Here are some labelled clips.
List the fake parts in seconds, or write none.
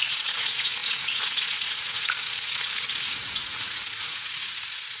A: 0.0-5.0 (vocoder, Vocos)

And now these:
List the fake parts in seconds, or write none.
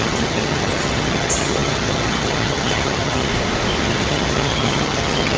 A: 0.0-3.3 (vocoder, HiFi-GAN); 3.8-5.4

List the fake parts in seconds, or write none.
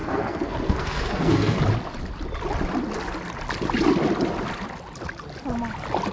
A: 0.0-1.6 (codec, SNAC)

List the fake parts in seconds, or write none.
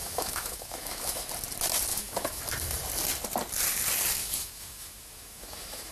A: 0.0-1.3 (autoencoder, DAC-VAE); 1.9-2.4; 4.2-5.9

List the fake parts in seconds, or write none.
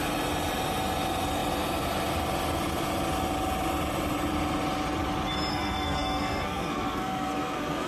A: 5.5-7.9 (codec, SNAC)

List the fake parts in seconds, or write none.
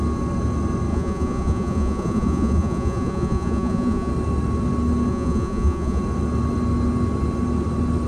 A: 0.9-4.1 (vocoder, Vocos); 5.1-6.0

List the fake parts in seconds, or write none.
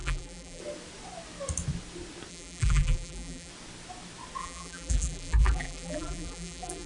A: 0.0-0.6 (vocoder, BigVGAN v2); 2.3-3.5; 4.4-6.9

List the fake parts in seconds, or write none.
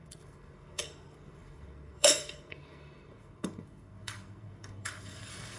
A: 0.0-5.6 (codec, SNAC)